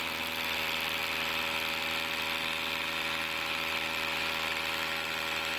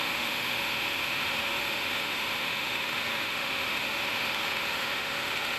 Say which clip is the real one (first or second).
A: first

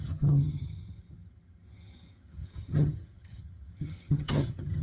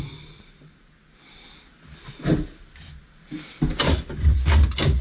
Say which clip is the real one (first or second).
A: second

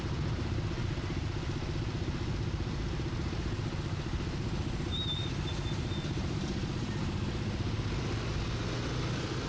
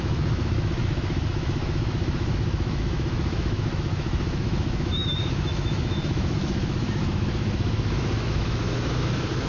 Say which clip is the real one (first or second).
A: first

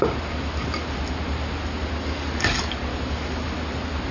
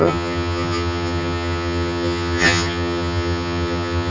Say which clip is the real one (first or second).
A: first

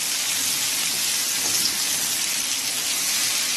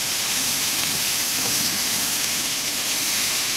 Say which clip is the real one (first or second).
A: first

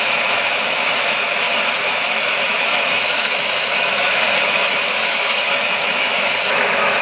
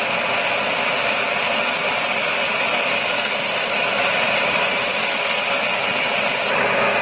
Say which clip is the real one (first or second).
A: second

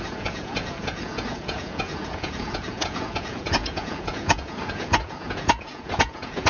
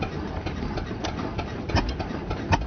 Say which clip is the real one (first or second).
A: second